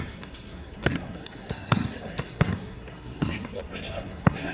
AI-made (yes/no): yes